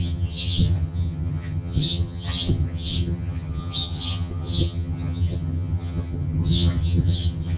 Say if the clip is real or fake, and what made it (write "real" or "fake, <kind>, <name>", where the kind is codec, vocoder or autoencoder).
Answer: fake, vocoder, HiFi-GAN